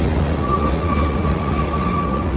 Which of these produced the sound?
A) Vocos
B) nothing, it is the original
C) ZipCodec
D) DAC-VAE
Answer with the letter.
A